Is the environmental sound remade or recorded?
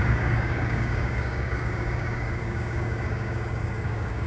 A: remade